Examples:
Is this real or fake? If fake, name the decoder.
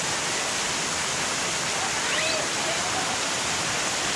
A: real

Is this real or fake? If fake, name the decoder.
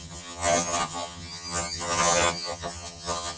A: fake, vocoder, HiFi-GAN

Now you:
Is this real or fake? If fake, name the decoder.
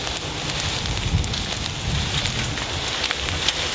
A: real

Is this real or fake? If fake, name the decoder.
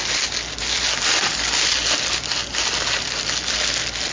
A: real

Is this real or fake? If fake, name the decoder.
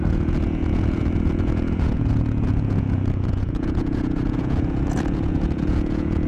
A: fake, vocoder, Vocos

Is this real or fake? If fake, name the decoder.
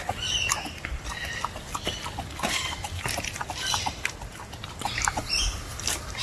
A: fake, vocoder, BigVGAN v2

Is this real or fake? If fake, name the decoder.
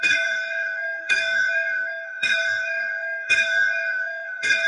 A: fake, codec, SNAC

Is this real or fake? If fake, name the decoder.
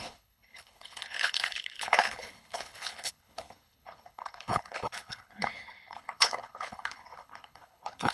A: fake, codec, HILCodec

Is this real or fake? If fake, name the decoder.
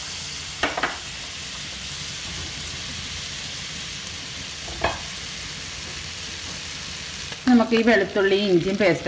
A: real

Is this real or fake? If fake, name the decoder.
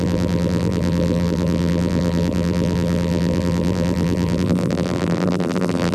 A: fake, vocoder, BigVGAN v2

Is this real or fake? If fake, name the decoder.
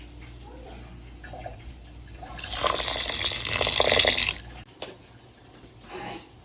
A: real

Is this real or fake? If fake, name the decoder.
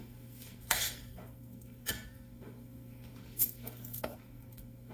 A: fake, codec, SNAC